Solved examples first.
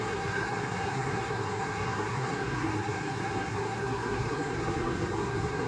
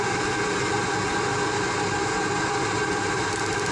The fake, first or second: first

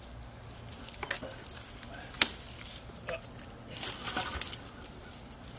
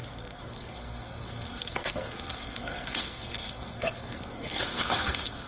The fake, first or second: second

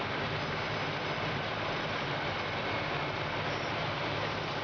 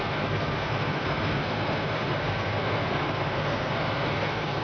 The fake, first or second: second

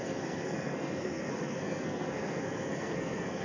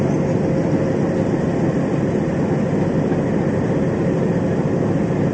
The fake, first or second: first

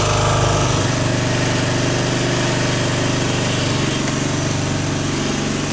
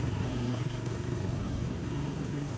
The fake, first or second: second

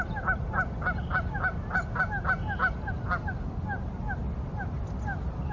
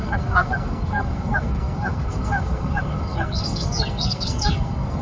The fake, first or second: second